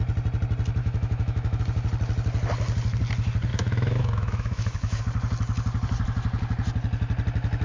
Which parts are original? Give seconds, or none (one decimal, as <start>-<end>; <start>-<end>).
0.0-0.8; 1.6-3.5; 5.0-7.6